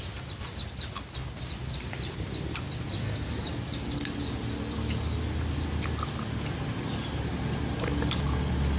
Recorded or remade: recorded